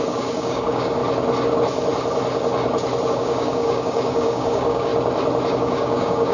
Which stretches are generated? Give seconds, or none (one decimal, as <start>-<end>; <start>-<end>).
0.0-1.0; 3.1-4.9; 5.5-6.3